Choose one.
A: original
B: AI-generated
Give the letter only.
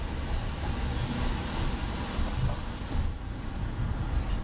A